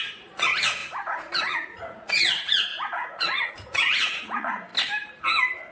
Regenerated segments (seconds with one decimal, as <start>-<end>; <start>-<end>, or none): 0.0-4.7